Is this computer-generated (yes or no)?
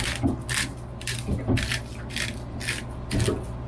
no